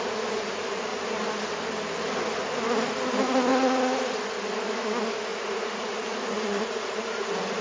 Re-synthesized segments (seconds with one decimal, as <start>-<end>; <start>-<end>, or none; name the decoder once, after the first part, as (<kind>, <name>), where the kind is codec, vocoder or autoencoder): 3.5-4.0 (vocoder, Vocos); 5.3-7.6